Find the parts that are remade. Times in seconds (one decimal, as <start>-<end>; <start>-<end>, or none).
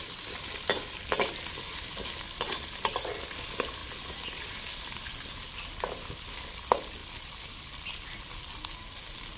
none